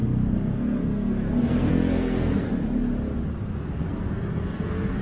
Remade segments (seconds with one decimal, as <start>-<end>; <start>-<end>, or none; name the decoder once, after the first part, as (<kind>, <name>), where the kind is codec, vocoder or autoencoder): 0.0-2.5 (codec, SNAC); 3.8-5.0